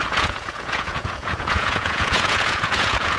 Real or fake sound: fake